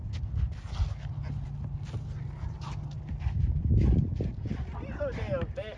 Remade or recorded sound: recorded